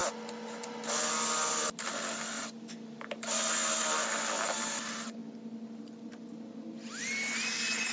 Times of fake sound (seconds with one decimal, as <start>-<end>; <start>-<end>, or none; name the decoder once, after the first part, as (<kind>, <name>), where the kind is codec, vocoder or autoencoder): none